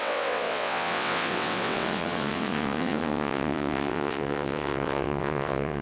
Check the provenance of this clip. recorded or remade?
remade